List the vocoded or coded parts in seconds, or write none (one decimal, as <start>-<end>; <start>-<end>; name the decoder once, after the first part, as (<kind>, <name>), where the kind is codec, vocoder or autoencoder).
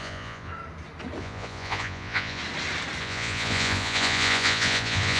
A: 0.0-0.5 (vocoder, Vocos); 1.2-2.4; 3.0-5.2